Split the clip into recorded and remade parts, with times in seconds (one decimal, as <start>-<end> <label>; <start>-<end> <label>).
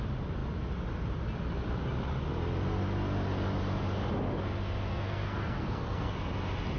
0.0-4.9 recorded; 4.9-6.1 remade; 6.1-6.8 recorded